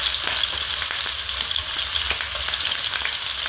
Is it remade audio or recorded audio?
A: recorded